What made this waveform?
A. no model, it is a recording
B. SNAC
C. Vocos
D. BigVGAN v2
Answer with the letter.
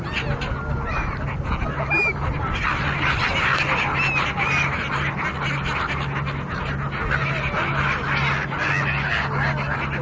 A